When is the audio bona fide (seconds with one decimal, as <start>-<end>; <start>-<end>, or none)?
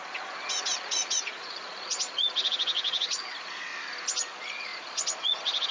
3.7-4.3